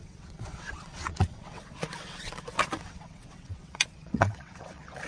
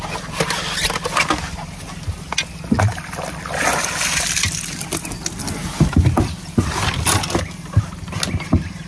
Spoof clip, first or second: first